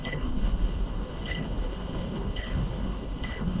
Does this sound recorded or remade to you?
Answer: remade